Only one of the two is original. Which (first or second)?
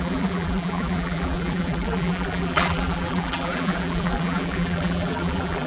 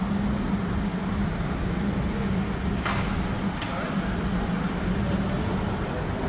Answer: second